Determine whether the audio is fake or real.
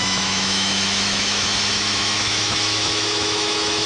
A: fake